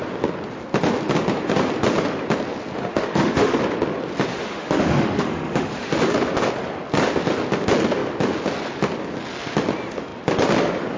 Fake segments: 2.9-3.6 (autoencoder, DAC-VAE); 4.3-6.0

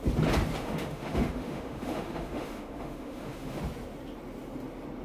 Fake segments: 0.6-3.6 (autoencoder, DAC-VAE)

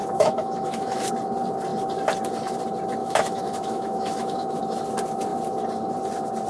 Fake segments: 0.0-1.1 (autoencoder, DAC-VAE); 3.0-4.6